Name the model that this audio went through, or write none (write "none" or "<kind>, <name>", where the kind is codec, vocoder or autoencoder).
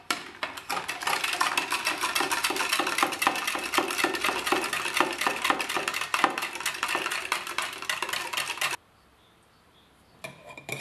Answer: vocoder, BigVGAN v2